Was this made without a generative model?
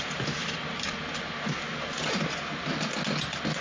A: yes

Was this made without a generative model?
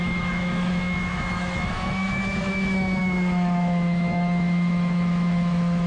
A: no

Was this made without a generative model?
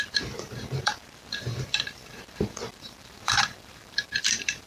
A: no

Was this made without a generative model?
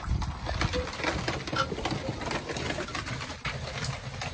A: yes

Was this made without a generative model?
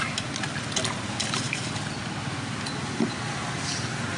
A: yes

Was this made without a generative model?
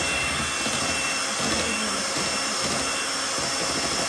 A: yes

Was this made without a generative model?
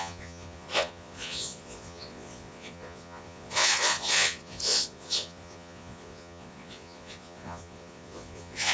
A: no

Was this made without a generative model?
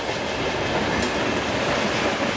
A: yes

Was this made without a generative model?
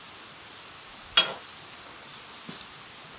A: yes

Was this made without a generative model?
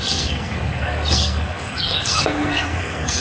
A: no